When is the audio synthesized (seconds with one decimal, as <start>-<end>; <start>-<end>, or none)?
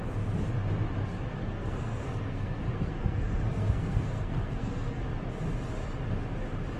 1.4-5.0